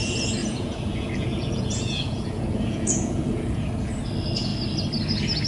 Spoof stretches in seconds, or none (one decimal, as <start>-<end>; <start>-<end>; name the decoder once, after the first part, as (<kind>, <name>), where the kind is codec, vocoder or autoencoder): 0.4-3.7 (vocoder, Vocos)